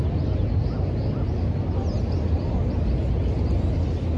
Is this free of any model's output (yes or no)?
yes